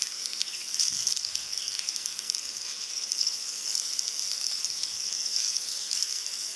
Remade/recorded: remade